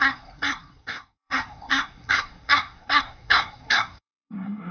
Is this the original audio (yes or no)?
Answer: no